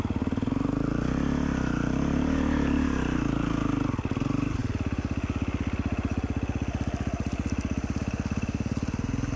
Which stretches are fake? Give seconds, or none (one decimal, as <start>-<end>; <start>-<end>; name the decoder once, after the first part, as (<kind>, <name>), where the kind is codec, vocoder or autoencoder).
none